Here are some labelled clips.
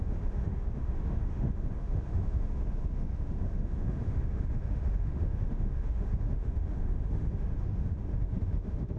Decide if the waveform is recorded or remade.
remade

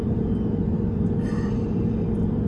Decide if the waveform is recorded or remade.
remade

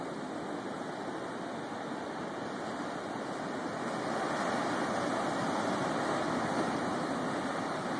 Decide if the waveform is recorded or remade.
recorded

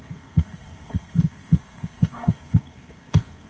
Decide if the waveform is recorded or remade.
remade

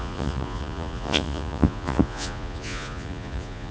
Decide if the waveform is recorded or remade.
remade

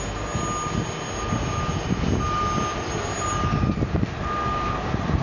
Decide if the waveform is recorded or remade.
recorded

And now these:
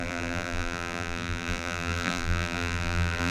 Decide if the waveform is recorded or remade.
remade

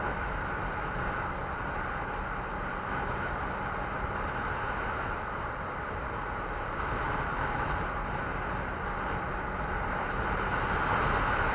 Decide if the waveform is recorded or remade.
recorded